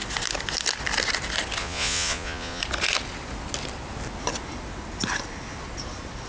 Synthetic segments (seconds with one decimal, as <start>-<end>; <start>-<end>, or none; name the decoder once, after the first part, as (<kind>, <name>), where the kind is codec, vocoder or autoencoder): 1.6-2.6 (vocoder, Vocos)